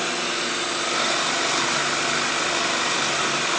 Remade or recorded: recorded